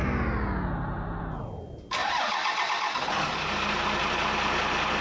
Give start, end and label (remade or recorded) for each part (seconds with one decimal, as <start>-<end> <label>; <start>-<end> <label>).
0.0-5.0 recorded